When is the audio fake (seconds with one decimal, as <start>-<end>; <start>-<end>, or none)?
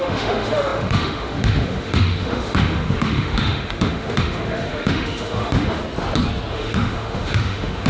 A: 0.0-5.8; 6.5-7.9